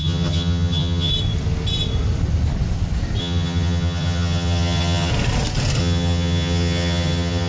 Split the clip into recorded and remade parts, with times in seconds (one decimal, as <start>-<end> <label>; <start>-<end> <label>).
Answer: 0.0-1.1 remade; 1.1-3.2 recorded; 3.2-5.1 remade; 5.1-5.8 recorded; 5.8-7.5 remade